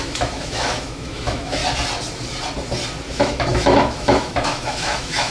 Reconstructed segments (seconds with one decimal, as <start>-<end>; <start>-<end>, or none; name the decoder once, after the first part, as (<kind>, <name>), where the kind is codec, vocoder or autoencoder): 0.0-1.6 (autoencoder, DAC-VAE); 3.1-5.3